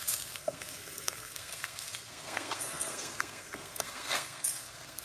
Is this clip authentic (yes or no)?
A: no